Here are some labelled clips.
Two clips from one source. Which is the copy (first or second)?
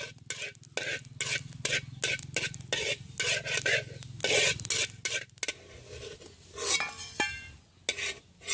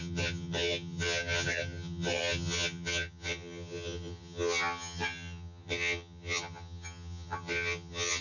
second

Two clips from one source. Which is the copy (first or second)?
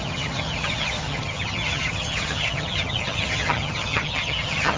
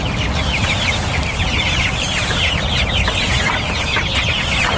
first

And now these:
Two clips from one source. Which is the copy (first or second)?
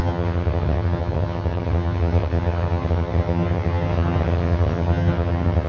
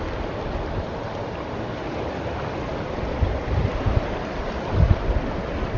first